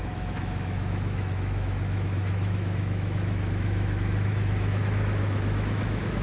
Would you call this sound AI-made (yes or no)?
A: yes